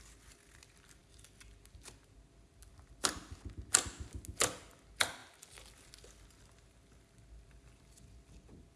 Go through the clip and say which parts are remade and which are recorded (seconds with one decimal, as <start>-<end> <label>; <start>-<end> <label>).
0.0-8.8 recorded